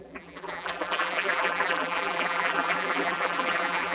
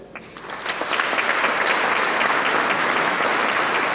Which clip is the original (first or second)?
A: second